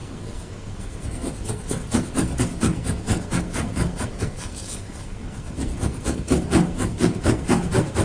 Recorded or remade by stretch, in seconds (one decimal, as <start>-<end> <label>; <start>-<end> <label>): 0.0-8.0 remade